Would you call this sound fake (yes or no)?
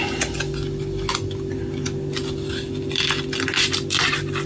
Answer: no